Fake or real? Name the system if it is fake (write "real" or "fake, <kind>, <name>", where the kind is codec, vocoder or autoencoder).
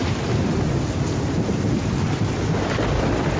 real